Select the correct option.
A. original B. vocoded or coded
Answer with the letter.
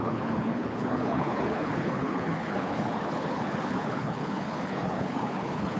B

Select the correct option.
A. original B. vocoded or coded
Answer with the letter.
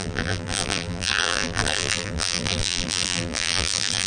B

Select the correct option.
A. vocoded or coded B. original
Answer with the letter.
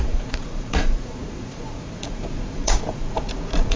A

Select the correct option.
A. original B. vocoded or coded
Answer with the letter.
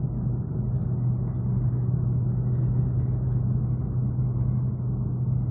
A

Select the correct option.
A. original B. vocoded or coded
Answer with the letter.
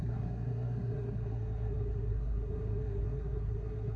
B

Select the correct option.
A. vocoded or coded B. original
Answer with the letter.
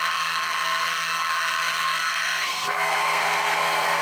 A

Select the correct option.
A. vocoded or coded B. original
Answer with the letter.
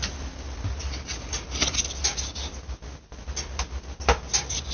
B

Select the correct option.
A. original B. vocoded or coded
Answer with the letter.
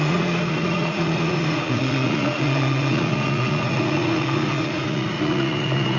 B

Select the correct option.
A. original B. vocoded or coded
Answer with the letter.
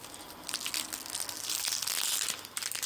A